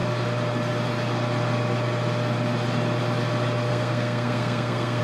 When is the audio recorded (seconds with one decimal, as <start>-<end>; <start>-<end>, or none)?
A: 0.0-3.7